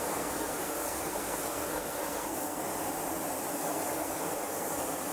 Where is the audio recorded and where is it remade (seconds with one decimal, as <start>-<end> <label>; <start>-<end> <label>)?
0.0-2.7 remade; 2.7-3.5 recorded; 3.5-5.1 remade